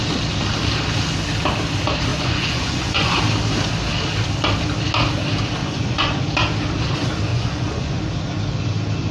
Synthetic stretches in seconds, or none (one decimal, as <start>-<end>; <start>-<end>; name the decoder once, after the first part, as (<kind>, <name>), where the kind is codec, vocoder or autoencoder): 2.1-3.2 (vocoder, Vocos); 5.6-6.2; 7.3-8.0